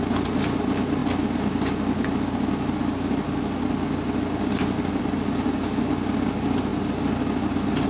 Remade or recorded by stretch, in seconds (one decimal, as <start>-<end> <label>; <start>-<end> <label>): 0.0-7.9 recorded